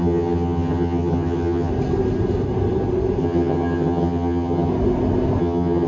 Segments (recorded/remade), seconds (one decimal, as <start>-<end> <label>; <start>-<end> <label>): 0.0-1.7 remade; 1.7-3.2 recorded; 3.2-4.7 remade; 4.7-5.4 recorded; 5.4-5.9 remade